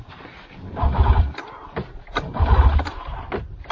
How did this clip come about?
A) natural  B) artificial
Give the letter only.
B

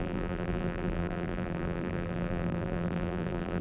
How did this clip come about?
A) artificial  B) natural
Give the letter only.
A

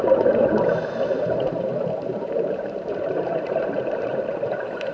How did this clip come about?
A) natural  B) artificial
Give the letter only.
B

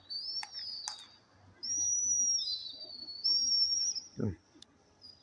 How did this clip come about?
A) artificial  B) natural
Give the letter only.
B